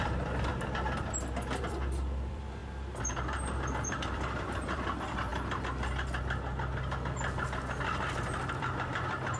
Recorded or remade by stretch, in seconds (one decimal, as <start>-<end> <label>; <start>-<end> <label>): 0.0-0.5 remade; 0.5-1.6 recorded; 1.6-2.6 remade; 2.6-3.8 recorded; 3.8-5.3 remade; 5.3-8.5 recorded; 8.5-9.4 remade